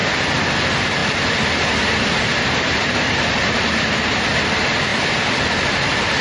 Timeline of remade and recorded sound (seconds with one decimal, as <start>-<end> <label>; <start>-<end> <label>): 0.0-6.2 recorded